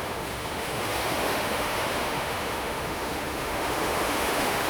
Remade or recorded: remade